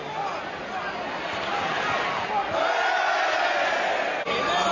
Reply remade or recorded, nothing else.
recorded